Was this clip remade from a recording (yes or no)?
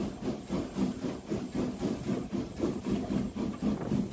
no